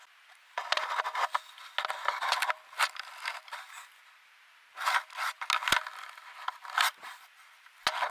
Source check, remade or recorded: recorded